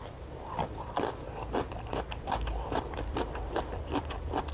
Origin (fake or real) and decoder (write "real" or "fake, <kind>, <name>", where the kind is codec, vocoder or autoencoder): fake, vocoder, BigVGAN v2